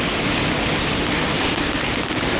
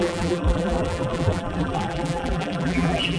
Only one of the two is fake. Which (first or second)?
second